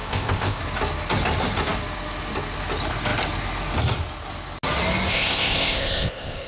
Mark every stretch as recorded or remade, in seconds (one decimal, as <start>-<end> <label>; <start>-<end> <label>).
0.0-0.6 remade; 0.6-5.1 recorded; 5.1-6.5 remade